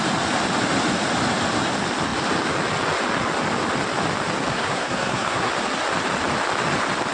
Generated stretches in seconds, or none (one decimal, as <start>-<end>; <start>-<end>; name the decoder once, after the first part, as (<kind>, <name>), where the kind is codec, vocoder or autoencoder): 4.5-5.5 (codec, SNAC)